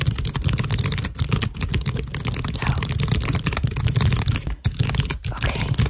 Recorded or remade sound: recorded